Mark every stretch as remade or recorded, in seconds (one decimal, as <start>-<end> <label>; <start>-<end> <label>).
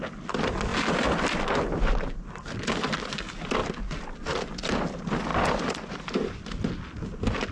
0.0-7.5 recorded